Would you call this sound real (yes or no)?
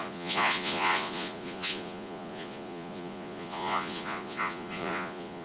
no